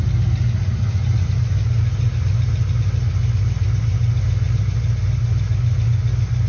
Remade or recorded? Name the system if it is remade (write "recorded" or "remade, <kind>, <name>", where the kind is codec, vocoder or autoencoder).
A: recorded